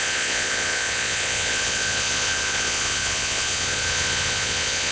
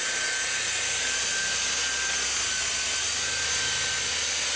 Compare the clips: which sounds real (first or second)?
second